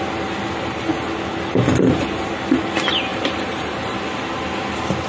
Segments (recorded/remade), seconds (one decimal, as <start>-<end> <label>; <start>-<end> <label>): 0.0-3.1 recorded; 3.1-4.0 remade; 4.0-5.1 recorded